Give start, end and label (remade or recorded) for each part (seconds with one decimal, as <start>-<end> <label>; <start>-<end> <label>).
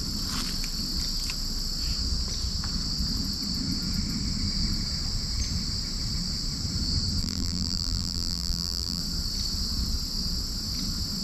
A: 0.0-7.2 recorded; 7.2-9.0 remade; 9.0-11.2 recorded